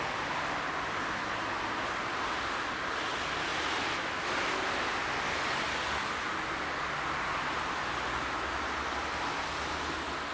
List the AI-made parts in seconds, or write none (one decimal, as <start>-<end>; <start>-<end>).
none